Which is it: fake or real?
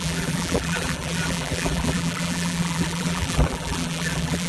fake